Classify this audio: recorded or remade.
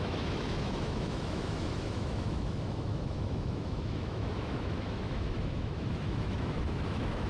remade